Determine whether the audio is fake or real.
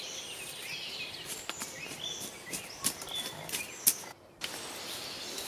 real